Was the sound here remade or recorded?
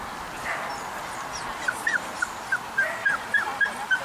recorded